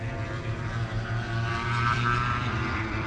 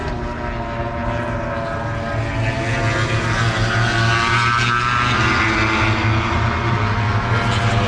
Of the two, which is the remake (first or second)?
first